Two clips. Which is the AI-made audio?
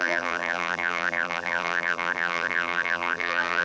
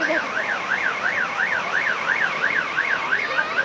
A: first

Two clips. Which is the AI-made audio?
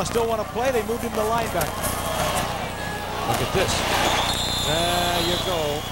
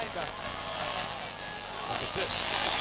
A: second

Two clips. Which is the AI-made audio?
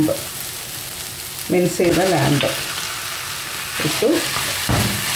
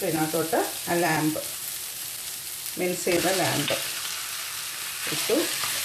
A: second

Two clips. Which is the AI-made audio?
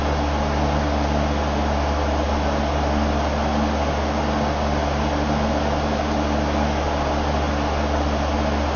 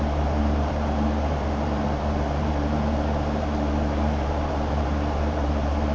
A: second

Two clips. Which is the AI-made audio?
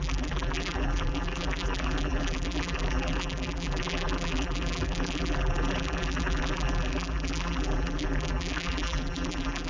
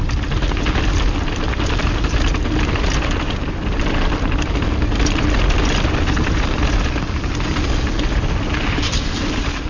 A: first